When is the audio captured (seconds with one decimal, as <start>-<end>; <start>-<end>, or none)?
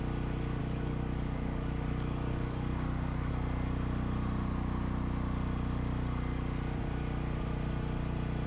0.0-0.6; 3.3-8.5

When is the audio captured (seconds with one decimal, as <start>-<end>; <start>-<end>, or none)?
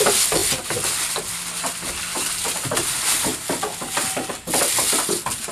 0.0-5.5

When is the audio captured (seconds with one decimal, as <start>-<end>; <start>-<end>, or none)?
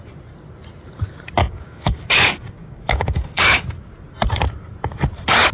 0.0-1.4; 3.9-5.5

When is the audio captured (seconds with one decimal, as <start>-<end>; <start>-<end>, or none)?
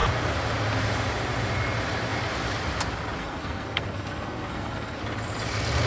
0.0-3.2; 5.0-5.9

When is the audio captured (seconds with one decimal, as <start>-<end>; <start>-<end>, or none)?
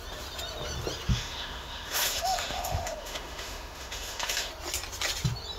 0.0-1.1; 4.5-5.6